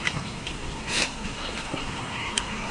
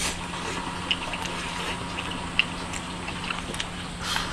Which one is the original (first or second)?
second